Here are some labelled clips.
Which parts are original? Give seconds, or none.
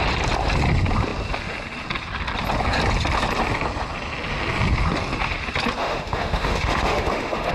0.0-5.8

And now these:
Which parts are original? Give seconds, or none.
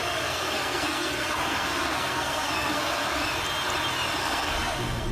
3.1-4.2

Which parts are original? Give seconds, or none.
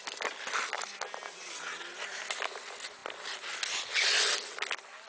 0.0-5.1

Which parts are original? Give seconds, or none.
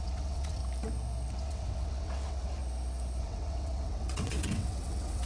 0.6-1.3; 2.6-3.2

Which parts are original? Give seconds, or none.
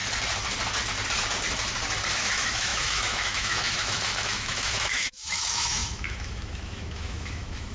0.0-2.1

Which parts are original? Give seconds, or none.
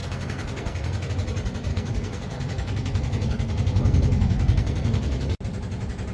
1.1-1.7; 5.4-6.1